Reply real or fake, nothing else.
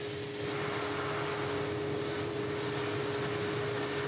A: real